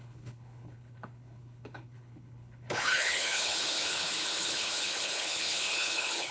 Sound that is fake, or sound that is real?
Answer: fake